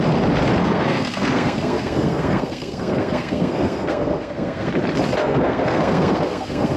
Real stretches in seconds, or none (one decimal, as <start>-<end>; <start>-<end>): 0.0-0.6; 4.7-5.2